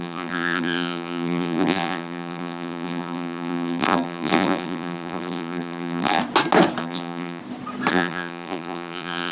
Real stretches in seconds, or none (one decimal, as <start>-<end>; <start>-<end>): 6.2-6.8; 7.4-7.9